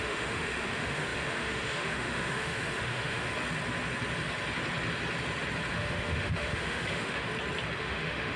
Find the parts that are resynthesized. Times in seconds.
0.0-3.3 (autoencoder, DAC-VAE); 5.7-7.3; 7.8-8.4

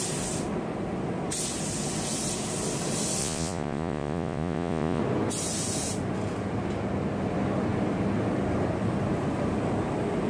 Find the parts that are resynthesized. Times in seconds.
3.2-5.0 (vocoder, Vocos)